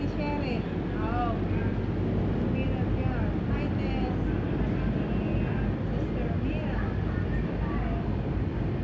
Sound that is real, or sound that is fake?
real